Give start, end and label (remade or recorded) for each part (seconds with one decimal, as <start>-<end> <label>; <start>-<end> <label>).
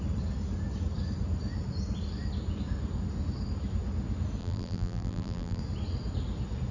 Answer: 0.0-4.4 recorded; 4.4-5.6 remade; 5.6-6.7 recorded